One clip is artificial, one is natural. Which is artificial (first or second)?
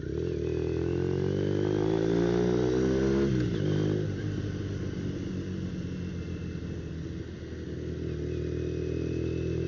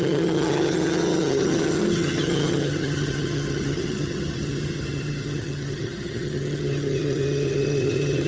second